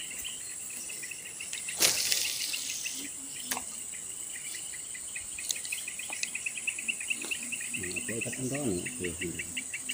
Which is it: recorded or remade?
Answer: recorded